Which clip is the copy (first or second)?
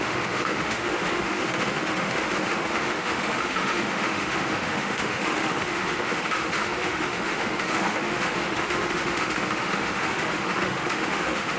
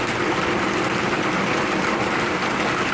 first